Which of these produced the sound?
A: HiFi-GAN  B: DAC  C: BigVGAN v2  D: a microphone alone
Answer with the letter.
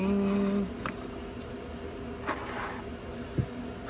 D